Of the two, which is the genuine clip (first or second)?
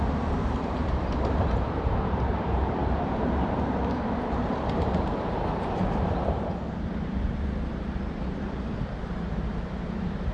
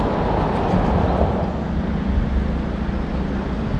second